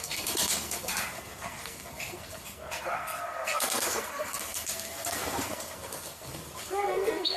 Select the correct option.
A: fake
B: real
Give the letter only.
A